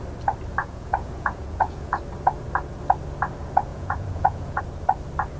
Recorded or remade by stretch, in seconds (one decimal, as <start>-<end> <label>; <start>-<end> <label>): 0.0-0.6 recorded; 0.6-2.0 remade; 2.0-3.7 recorded; 3.7-4.6 remade; 4.6-5.4 recorded